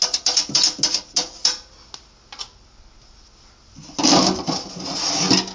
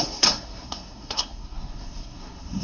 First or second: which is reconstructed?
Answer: second